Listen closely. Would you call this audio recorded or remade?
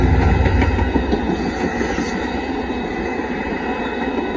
recorded